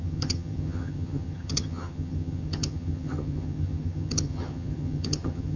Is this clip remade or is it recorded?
remade